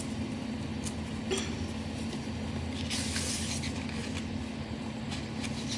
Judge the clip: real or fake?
real